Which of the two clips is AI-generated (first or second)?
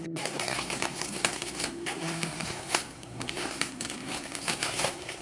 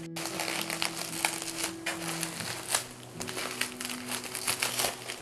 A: first